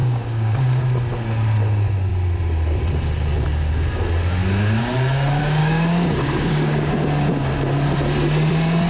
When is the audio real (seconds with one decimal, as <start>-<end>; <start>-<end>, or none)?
0.8-5.6; 6.9-8.9